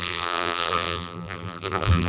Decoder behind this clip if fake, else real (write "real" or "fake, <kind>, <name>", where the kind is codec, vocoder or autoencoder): fake, vocoder, BigVGAN v2